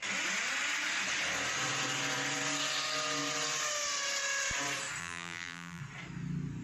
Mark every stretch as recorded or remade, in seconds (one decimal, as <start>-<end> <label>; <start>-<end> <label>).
0.0-5.0 recorded; 5.0-5.8 remade; 5.8-6.6 recorded